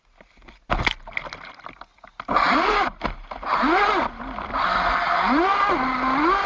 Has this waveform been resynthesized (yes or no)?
no